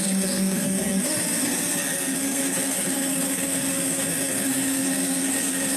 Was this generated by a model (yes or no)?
yes